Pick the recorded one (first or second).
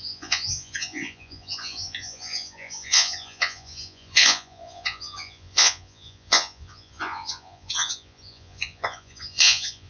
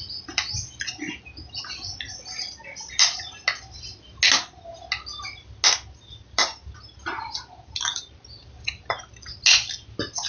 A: second